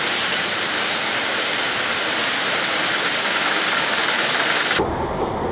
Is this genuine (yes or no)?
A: no